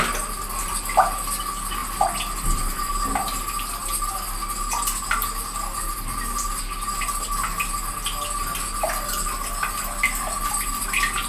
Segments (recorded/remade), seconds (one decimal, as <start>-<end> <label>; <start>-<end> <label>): 0.0-11.3 recorded